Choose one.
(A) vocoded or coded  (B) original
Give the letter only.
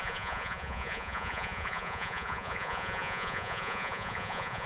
A